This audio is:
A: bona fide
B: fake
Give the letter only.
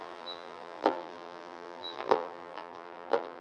B